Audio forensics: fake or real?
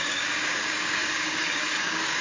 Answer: fake